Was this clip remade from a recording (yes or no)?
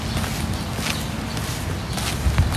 no